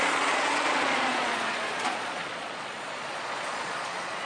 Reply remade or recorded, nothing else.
remade